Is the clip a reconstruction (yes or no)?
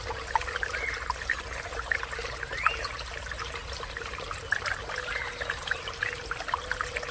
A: no